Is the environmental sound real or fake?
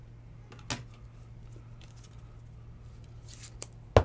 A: real